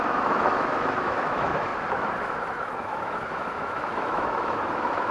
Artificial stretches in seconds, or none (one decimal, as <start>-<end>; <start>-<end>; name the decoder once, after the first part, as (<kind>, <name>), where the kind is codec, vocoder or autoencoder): 0.0-1.7 (autoencoder, DAC-VAE); 2.2-5.1